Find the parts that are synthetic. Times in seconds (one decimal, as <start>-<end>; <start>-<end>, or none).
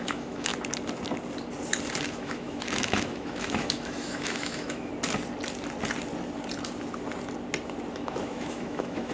0.0-0.5; 2.0-4.9; 7.9-9.1